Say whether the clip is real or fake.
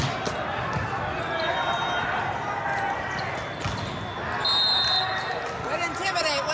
real